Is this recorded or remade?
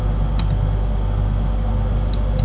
recorded